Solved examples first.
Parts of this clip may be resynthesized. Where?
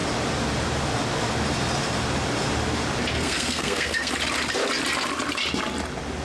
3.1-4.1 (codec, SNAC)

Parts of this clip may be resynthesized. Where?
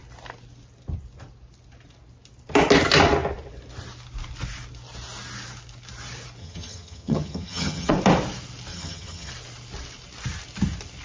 6.4-7.9 (vocoder, HiFi-GAN); 8.7-9.3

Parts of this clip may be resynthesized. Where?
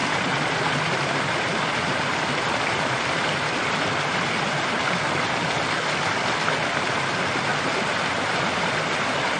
0.0-3.8 (vocoder, BigVGAN v2); 7.5-8.8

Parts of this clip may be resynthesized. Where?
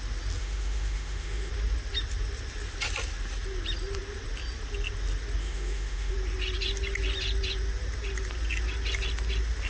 0.4-1.5 (autoencoder, DAC-VAE); 5.4-6.1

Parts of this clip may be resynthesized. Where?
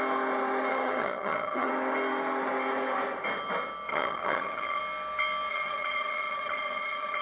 0.7-1.7 (vocoder, HiFi-GAN); 3.9-4.8; 5.5-7.2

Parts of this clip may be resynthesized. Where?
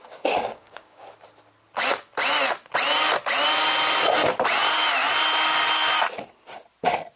0.0-1.0 (codec, DAC)